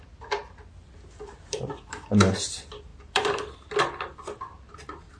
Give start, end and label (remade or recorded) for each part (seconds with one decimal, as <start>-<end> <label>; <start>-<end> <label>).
0.0-0.4 remade; 0.4-0.9 recorded; 0.9-5.2 remade